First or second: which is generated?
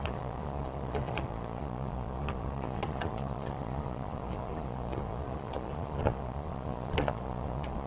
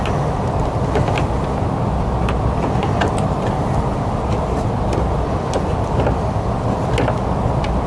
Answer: first